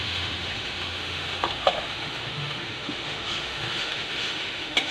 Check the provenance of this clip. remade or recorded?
remade